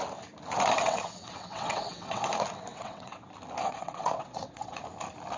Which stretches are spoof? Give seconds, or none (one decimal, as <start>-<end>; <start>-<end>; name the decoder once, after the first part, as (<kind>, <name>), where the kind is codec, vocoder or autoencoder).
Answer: 0.8-2.3 (vocoder, WaveNeXt); 2.7-3.2; 3.6-4.8